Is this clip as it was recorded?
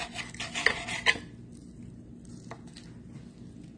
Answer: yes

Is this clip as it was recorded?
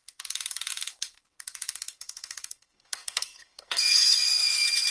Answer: no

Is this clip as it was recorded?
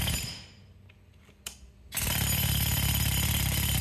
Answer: yes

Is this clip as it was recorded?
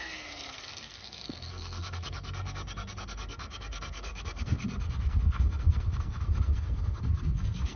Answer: no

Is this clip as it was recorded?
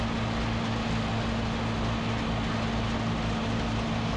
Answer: yes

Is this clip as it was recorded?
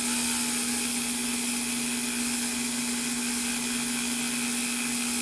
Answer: yes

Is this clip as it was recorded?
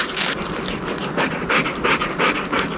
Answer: yes